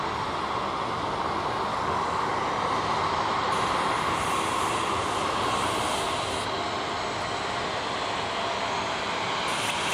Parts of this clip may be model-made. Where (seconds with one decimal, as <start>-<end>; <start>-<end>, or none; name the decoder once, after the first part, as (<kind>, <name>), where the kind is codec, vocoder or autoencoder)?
1.7-2.3 (codec, DAC)